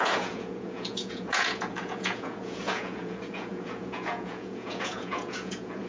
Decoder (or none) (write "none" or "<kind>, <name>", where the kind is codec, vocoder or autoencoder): vocoder, Vocos